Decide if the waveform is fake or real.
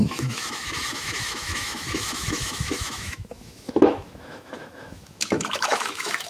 fake